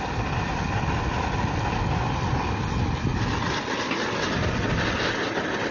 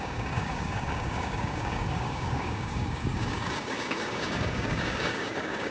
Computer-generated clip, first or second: second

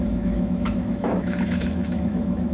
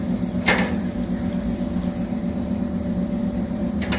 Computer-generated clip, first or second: first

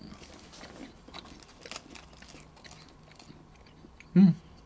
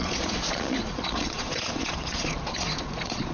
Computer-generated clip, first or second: second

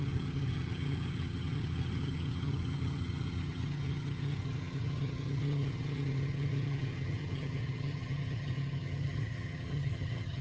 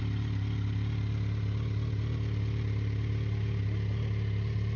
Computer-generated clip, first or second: first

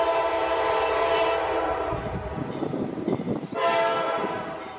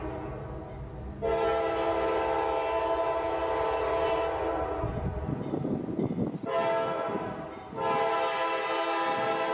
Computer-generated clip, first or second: first